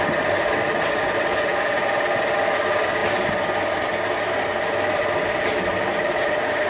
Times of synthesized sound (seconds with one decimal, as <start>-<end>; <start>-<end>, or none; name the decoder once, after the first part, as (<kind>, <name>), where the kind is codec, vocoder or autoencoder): 0.0-1.5 (vocoder, BigVGAN v2); 2.4-6.7